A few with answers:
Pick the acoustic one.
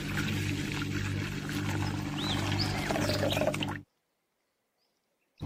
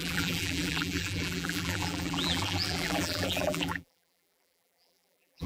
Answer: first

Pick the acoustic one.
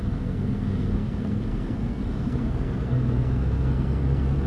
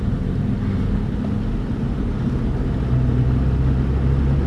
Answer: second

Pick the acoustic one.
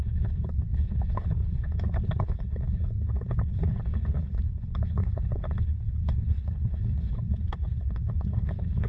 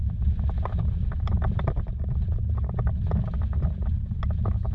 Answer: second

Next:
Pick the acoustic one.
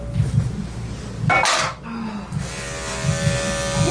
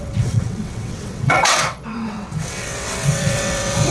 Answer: first